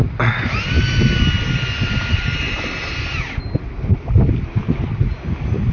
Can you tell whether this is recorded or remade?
recorded